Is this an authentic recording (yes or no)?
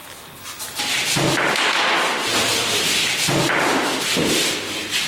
yes